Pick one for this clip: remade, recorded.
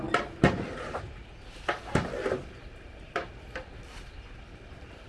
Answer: recorded